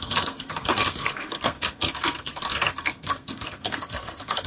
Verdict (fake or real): fake